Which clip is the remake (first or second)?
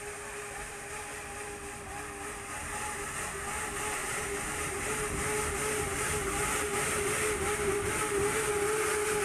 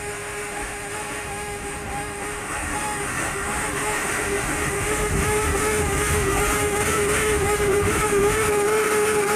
second